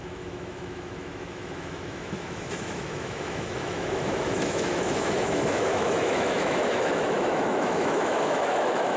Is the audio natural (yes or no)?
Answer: no